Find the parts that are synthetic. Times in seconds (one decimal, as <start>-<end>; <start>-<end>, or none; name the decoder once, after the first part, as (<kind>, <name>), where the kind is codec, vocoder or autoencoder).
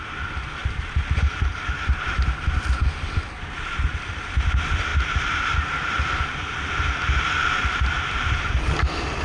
0.6-2.4 (vocoder, BigVGAN v2); 4.9-6.4